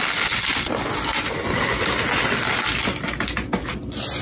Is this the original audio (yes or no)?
yes